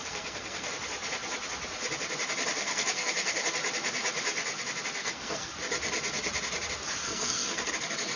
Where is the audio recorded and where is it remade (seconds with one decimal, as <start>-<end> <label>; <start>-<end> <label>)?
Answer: 0.0-0.7 remade; 0.7-2.6 recorded; 2.6-3.4 remade; 3.4-5.0 recorded; 5.0-5.5 remade; 5.5-7.0 recorded; 7.0-7.7 remade; 7.7-8.2 recorded